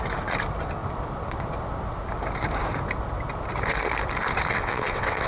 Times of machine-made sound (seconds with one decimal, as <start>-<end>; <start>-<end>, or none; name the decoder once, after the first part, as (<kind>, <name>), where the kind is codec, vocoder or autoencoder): 4.5-5.3 (vocoder, WaveNeXt)

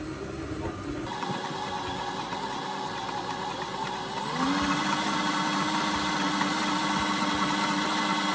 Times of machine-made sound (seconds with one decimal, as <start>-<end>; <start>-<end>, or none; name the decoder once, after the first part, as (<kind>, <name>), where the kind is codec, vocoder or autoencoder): none

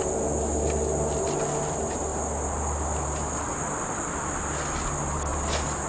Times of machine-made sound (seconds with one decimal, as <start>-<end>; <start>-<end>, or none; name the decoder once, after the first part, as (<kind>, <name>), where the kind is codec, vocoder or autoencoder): none

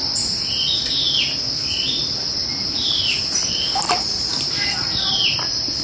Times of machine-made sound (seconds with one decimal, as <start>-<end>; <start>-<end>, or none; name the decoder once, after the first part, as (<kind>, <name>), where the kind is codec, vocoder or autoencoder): none

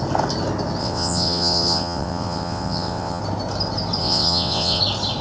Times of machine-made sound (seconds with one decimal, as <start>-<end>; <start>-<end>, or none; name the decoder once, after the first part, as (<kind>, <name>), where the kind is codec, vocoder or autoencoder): 0.8-3.2 (vocoder, WaveNeXt); 4.0-4.8

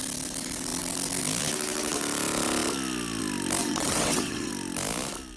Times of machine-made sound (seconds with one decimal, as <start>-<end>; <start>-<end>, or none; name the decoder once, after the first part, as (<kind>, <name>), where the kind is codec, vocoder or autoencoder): 3.6-4.5 (vocoder, WaveNeXt)

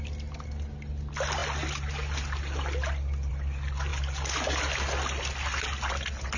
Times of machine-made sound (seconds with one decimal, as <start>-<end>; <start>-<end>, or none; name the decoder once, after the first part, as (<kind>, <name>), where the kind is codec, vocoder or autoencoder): none

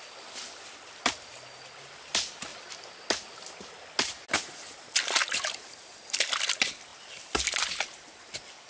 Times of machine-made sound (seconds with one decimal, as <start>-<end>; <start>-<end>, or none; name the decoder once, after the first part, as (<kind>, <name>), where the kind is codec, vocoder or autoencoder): none